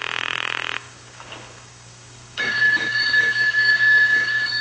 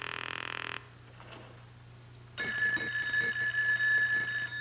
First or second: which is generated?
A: first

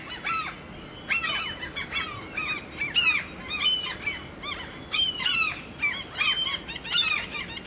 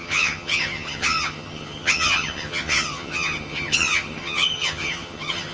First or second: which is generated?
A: second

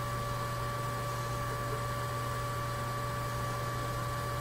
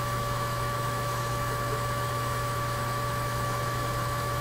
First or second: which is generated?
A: second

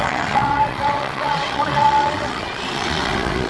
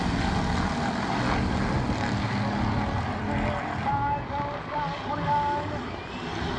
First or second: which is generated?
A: first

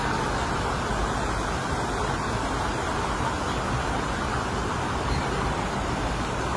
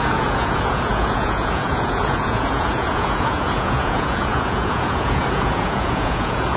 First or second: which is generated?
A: second